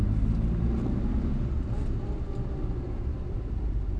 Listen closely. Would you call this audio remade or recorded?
recorded